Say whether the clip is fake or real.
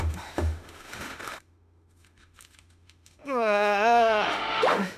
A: fake